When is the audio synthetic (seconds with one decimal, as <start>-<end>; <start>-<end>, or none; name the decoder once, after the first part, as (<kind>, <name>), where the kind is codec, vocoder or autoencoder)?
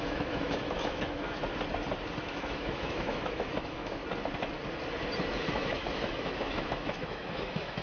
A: 0.0-1.4 (autoencoder, DAC-VAE); 2.2-4.0; 5.4-7.8